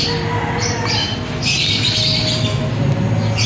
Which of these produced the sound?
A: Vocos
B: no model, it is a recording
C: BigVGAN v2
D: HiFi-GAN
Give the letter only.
B